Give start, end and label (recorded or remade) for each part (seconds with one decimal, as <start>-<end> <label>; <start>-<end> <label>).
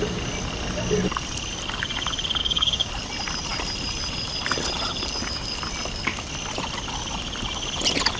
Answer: 0.0-2.4 recorded; 2.4-2.9 remade; 2.9-8.2 recorded